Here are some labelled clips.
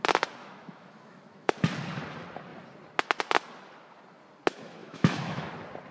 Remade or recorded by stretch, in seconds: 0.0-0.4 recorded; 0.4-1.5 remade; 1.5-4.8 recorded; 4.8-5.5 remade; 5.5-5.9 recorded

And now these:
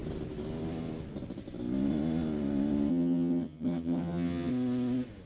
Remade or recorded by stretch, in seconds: 0.0-2.9 recorded; 2.9-4.5 remade; 4.5-5.3 recorded

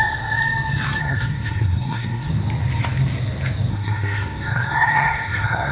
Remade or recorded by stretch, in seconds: 0.0-1.0 recorded; 1.0-2.3 remade; 2.3-3.7 recorded; 3.7-5.7 remade

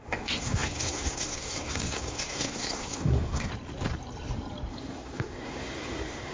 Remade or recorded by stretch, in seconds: 0.0-3.5 remade; 3.5-4.7 recorded; 4.7-6.3 remade